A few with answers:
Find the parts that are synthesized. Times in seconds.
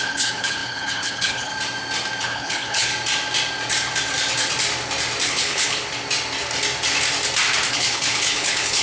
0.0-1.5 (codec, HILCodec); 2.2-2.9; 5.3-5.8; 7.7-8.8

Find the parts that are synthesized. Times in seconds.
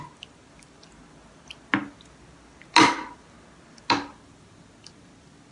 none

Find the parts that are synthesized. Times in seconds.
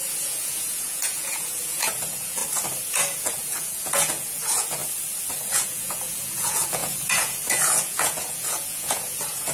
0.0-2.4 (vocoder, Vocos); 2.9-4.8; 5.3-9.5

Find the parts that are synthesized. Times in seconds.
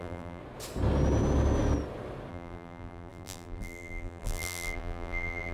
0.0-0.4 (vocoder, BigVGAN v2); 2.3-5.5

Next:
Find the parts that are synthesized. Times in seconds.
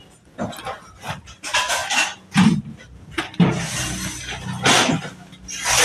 none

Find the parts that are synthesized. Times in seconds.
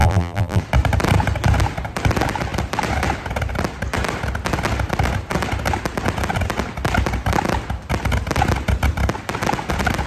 0.0-0.6 (vocoder, BigVGAN v2)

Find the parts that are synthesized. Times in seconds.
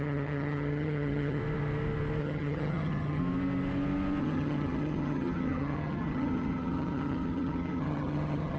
0.0-1.4 (vocoder, HiFi-GAN); 2.2-3.2; 4.2-8.6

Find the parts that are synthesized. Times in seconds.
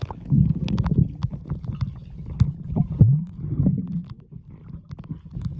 none